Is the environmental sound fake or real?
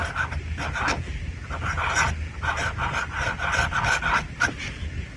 real